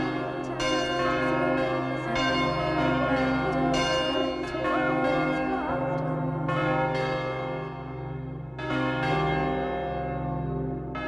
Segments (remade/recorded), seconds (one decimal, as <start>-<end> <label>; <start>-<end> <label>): 0.0-11.1 recorded